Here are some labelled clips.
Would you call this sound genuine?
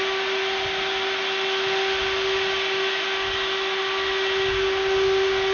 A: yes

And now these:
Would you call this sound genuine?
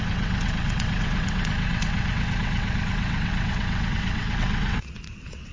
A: no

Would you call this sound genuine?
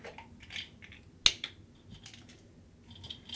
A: yes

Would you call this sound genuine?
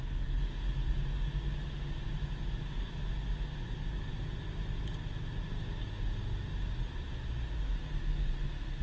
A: yes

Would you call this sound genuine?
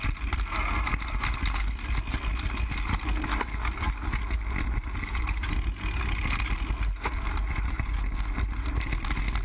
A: yes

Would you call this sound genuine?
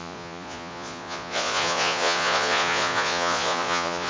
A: no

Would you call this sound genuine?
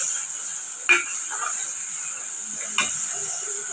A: yes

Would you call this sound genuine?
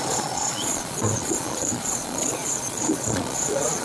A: no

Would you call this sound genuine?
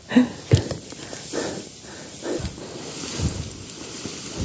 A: yes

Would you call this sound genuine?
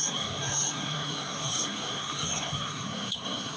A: no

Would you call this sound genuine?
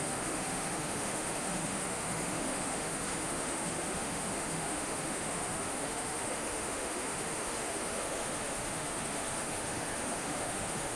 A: no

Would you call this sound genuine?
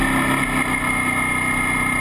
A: yes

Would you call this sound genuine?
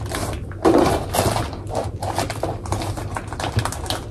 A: yes